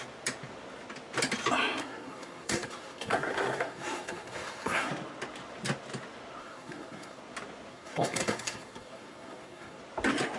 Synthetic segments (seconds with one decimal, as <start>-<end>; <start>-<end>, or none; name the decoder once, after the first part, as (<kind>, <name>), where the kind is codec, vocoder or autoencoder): 1.8-4.9 (codec, SNAC); 6.4-7.2; 7.7-9.8